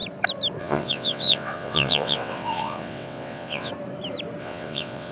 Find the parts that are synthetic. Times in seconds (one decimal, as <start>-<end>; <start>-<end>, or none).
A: 0.6-3.7; 4.4-5.1